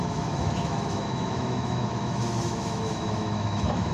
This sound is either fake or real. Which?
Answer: fake